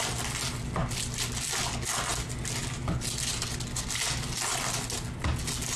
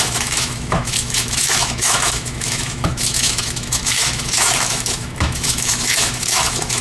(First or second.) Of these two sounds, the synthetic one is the second